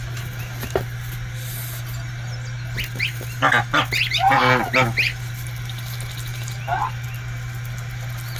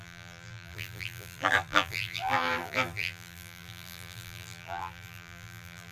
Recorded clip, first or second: first